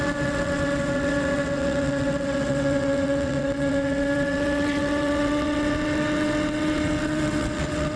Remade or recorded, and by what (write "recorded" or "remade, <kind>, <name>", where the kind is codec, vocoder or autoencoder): remade, vocoder, WaveNeXt